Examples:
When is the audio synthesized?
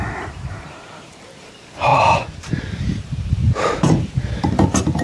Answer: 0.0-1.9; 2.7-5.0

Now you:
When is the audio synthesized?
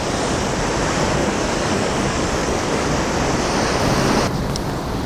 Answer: 1.2-2.9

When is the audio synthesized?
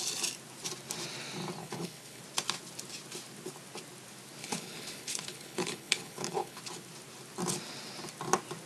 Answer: 1.6-2.2; 4.4-6.6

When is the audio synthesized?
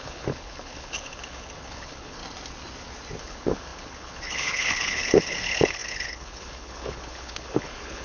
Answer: 0.0-2.2; 3.2-8.0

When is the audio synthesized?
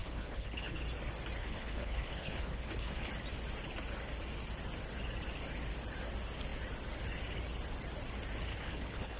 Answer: 0.0-0.8; 1.4-3.1; 8.5-9.2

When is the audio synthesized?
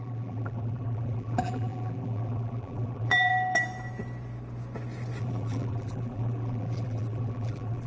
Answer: 0.0-3.3; 5.2-7.9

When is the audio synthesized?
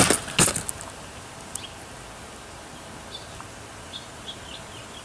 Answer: none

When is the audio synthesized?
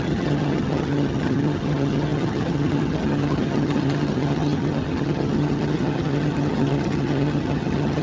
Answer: 0.0-8.0